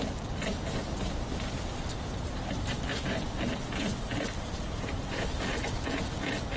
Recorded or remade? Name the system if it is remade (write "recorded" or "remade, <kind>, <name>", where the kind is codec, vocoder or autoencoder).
recorded